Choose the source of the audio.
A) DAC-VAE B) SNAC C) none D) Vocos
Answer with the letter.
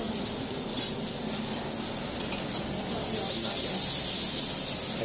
C